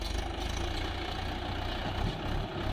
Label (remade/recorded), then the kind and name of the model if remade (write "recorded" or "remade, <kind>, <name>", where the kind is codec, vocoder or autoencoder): recorded